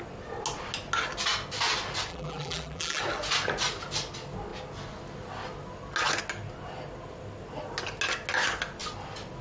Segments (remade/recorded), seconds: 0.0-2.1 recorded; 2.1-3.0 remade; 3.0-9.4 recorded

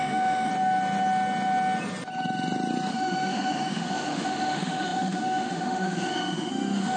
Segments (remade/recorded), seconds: 0.0-0.5 remade; 0.5-2.9 recorded; 2.9-7.0 remade